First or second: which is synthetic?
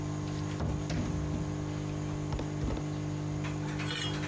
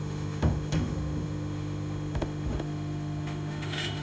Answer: second